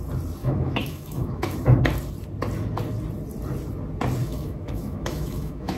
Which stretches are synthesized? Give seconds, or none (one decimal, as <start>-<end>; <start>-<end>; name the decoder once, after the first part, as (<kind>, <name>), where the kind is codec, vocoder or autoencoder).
0.4-1.8 (autoencoder, DAC-VAE); 4.2-5.8